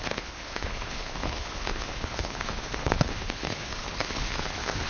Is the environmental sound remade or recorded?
remade